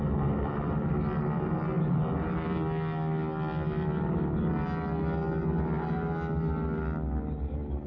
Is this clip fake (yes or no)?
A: no